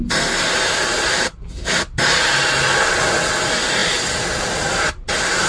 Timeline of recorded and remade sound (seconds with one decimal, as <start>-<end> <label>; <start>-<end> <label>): 0.0-5.5 recorded